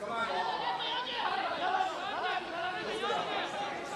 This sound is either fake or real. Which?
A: real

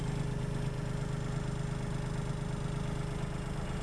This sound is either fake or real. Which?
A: real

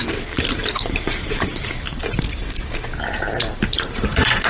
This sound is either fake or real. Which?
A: fake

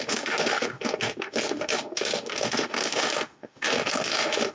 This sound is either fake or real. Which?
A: fake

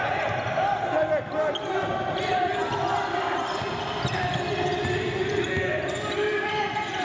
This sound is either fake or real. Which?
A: real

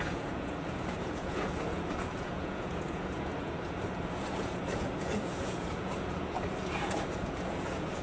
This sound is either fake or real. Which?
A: fake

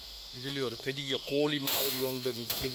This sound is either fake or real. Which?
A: fake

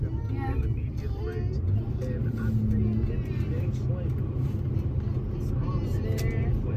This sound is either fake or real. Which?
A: real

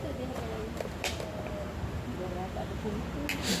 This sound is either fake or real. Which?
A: real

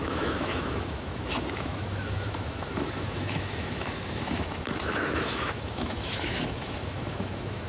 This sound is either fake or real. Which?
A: fake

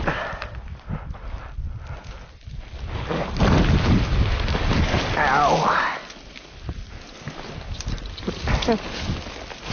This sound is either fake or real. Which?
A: real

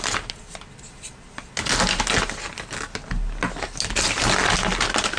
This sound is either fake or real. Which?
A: real